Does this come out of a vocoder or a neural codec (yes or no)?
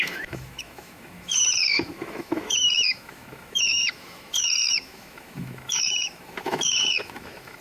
yes